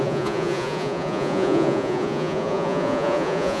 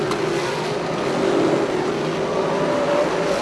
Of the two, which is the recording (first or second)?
second